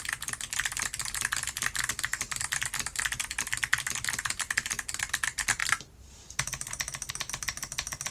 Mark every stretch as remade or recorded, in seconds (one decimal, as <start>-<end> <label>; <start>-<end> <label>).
0.0-8.1 recorded